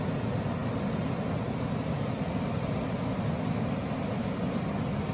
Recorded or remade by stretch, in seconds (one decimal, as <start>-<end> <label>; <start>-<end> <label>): 0.0-5.1 recorded